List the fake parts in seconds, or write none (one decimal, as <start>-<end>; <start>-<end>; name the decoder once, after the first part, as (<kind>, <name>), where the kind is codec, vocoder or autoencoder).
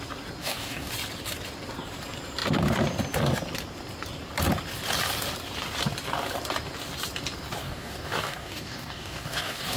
0.4-0.9 (codec, DAC); 7.6-9.8